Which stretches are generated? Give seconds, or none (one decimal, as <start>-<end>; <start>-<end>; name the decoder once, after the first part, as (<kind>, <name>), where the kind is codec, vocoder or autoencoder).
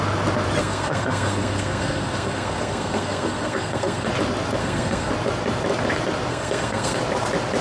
0.6-4.1 (codec, SNAC); 4.6-5.1; 6.3-7.0